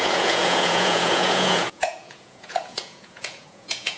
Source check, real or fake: fake